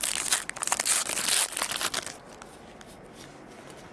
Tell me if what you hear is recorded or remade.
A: recorded